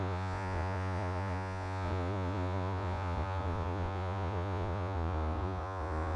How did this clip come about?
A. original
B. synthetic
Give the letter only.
B